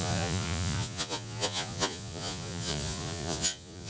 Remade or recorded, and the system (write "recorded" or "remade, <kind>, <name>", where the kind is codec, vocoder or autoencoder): remade, vocoder, Vocos